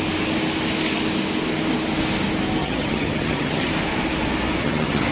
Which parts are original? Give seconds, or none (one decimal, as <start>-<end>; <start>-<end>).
0.0-2.6; 3.7-4.6